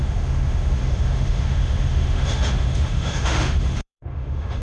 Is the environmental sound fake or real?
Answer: fake